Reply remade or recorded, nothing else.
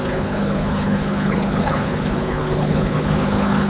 remade